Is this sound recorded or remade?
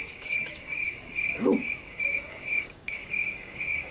remade